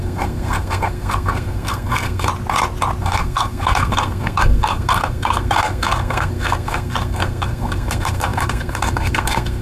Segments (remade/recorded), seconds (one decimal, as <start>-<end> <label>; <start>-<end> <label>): 0.0-2.3 remade; 2.3-3.0 recorded; 3.0-9.6 remade